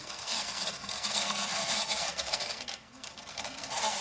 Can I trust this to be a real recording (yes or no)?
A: no